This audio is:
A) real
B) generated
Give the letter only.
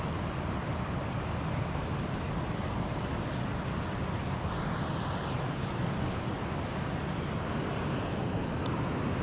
A